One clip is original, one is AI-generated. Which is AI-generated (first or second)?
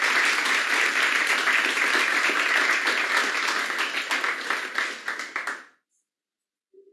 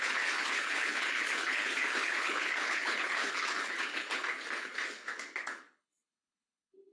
second